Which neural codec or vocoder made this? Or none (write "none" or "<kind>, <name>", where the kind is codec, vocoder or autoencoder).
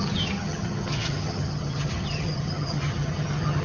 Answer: vocoder, HiFi-GAN